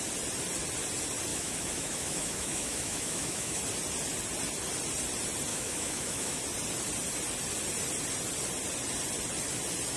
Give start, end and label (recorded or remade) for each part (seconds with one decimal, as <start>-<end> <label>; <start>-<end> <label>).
0.0-1.3 recorded; 1.3-3.6 remade; 3.6-5.5 recorded; 5.5-6.4 remade; 6.4-10.0 recorded